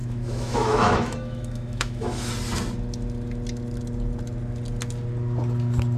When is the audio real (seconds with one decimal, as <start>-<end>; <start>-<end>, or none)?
2.3-6.0